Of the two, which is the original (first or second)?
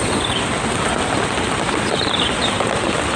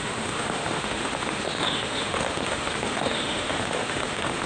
first